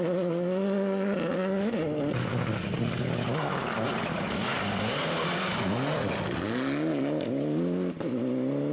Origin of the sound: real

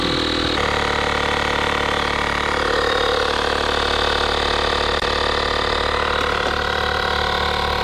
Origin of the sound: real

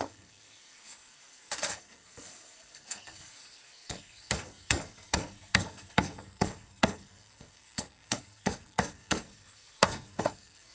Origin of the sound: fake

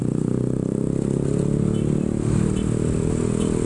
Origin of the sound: real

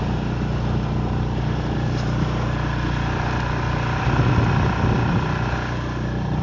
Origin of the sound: real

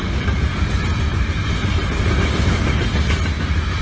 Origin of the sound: real